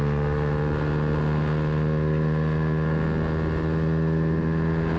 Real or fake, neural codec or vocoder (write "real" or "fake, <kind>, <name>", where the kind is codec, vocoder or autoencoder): real